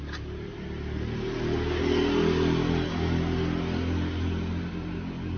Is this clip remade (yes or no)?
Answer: no